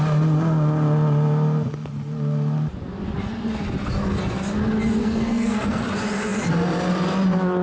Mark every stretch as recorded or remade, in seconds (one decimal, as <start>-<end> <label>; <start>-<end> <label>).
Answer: 0.0-5.0 recorded; 5.0-5.8 remade; 5.8-7.6 recorded